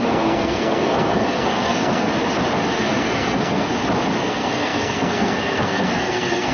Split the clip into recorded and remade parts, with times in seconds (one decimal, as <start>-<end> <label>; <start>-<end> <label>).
0.0-2.1 remade; 2.1-2.8 recorded; 2.8-3.7 remade; 3.7-4.2 recorded; 4.2-6.5 remade